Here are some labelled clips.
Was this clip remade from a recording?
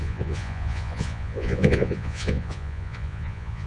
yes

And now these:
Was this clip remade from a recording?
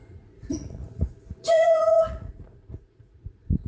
yes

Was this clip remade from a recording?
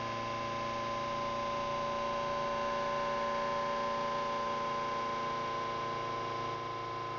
no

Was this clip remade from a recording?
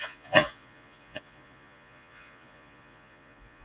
yes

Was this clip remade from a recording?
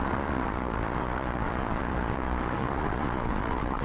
yes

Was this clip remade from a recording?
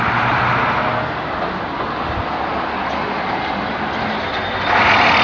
no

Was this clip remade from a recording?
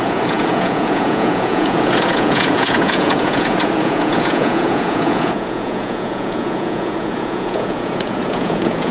yes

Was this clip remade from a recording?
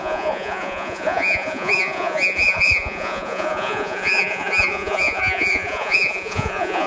yes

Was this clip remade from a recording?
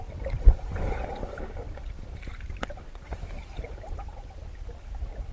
no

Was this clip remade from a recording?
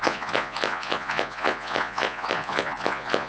yes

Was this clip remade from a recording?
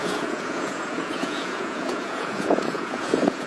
yes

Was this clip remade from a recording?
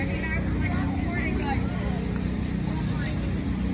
no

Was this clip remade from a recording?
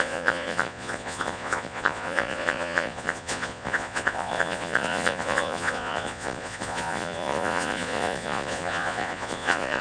yes